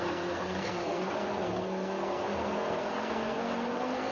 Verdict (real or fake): fake